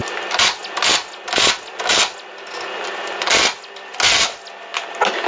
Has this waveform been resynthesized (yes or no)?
no